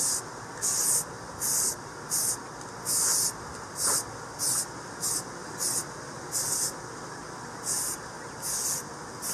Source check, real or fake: real